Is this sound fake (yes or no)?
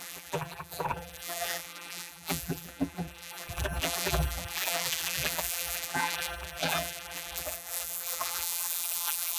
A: yes